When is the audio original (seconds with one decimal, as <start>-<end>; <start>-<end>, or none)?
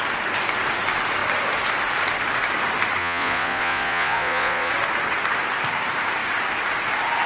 0.0-3.0; 4.7-7.3